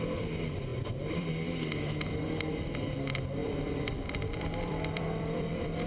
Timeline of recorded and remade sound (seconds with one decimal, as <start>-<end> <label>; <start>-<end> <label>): 0.0-0.7 recorded; 0.7-1.3 remade; 1.3-3.4 recorded; 3.4-5.9 remade